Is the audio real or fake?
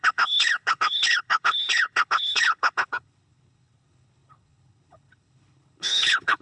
fake